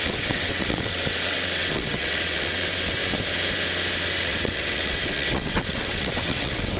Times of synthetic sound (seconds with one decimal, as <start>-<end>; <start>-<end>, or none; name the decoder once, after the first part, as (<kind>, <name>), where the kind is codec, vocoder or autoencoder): 0.0-3.0 (vocoder, WaveNeXt); 4.1-6.8